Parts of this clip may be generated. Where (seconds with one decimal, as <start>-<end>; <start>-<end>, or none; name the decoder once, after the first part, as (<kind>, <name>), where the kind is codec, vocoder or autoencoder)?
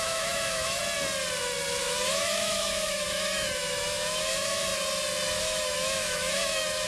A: 0.0-0.8 (autoencoder, DAC-VAE); 1.8-4.7; 5.4-6.9